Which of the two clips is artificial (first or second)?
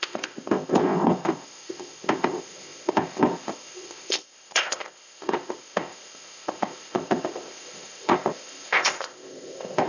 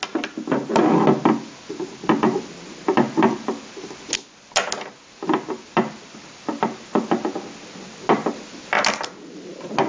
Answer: first